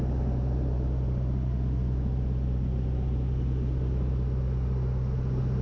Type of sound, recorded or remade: recorded